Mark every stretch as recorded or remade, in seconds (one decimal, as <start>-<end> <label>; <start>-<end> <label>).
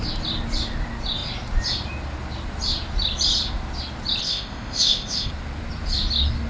0.0-4.2 recorded; 4.2-5.3 remade; 5.3-6.5 recorded